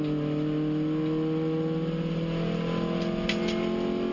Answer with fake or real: real